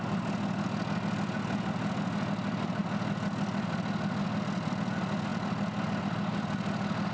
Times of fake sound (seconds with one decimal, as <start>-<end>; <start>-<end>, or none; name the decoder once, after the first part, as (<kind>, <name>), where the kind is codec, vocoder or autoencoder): none